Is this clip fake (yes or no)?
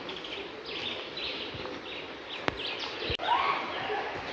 no